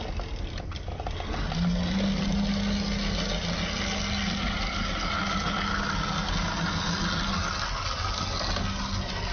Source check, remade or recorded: recorded